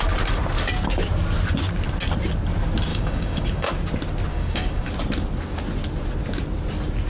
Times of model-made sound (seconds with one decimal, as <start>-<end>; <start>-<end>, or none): 2.9-3.7; 4.3-4.9